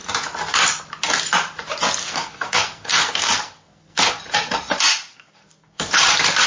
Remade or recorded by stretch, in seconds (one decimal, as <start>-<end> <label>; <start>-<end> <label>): 0.0-2.0 recorded; 2.0-4.1 remade; 4.1-5.1 recorded; 5.1-5.9 remade; 5.9-6.5 recorded